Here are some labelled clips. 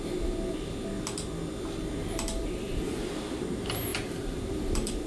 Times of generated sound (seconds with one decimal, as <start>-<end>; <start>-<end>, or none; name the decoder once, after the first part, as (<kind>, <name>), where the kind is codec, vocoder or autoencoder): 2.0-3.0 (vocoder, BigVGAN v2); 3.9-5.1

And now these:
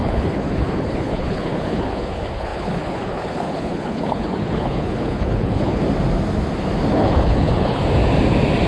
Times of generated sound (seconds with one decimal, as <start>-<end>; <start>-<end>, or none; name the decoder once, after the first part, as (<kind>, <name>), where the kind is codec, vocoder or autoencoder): 0.0-5.8 (codec, HILCodec); 6.9-7.8

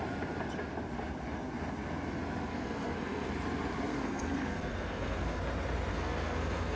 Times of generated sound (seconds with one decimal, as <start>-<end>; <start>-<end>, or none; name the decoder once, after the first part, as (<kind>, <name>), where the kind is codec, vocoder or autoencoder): 2.5-3.3 (codec, SNAC); 3.9-5.4; 5.9-6.8